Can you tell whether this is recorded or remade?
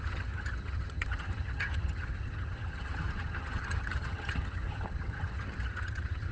remade